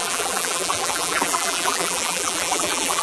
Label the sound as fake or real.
fake